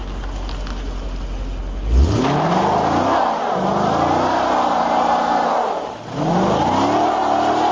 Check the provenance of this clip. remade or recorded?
recorded